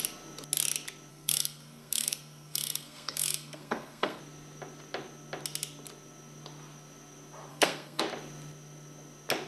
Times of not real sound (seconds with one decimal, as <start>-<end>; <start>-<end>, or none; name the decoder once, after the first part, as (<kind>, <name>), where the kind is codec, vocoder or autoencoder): 1.1-4.2 (codec, SNAC); 7.5-8.0